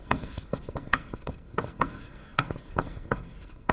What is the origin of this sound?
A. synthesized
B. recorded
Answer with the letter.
A